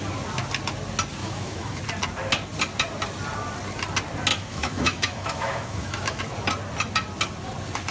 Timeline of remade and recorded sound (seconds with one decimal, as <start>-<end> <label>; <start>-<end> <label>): 0.0-1.2 recorded; 1.2-1.8 remade; 1.8-4.3 recorded; 4.3-6.2 remade; 6.2-7.9 recorded

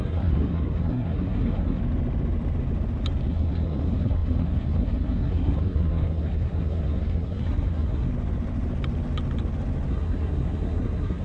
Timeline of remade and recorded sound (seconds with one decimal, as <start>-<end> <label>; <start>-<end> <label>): 0.0-1.8 remade; 1.8-3.3 recorded; 3.3-8.1 remade; 8.1-9.9 recorded; 9.9-11.2 remade

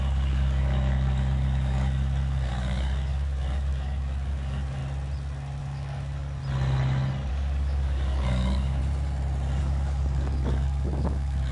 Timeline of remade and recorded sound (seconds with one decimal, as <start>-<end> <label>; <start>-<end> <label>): 0.0-4.8 remade; 4.8-5.6 recorded; 5.6-6.4 remade; 6.4-7.3 recorded; 7.3-8.8 remade; 8.8-9.6 recorded; 9.6-11.5 remade

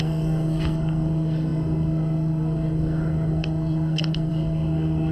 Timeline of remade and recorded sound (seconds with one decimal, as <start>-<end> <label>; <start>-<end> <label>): 0.0-5.1 remade

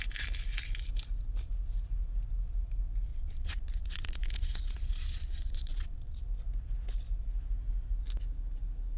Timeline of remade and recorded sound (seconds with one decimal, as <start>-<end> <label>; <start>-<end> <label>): 0.0-3.1 recorded; 3.1-6.2 remade; 6.2-9.0 recorded

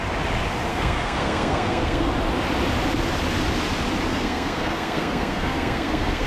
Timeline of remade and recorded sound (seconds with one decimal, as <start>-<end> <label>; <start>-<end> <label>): 0.0-0.7 recorded; 0.7-2.1 remade; 2.1-4.1 recorded; 4.1-6.3 remade